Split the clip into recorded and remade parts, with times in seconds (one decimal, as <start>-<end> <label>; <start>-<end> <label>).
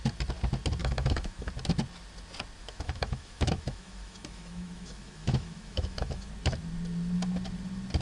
0.0-0.8 recorded; 0.8-1.5 remade; 1.5-2.6 recorded; 2.6-6.3 remade; 6.3-8.0 recorded